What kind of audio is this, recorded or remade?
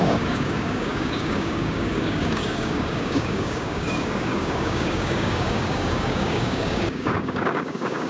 remade